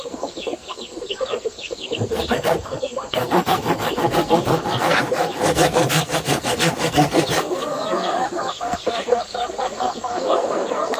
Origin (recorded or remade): remade